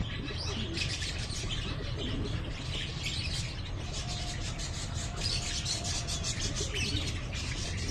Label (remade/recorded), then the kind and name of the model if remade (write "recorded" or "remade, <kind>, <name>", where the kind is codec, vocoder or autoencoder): remade, vocoder, BigVGAN v2